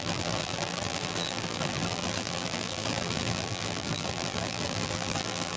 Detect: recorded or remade remade